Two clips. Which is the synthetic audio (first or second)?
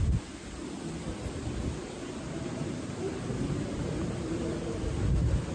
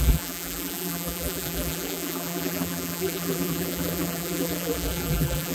second